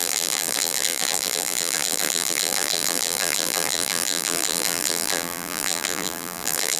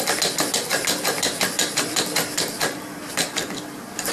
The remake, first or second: first